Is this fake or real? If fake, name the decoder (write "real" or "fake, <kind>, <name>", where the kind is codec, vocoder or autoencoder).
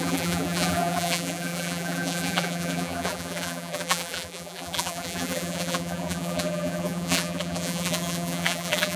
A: fake, vocoder, BigVGAN v2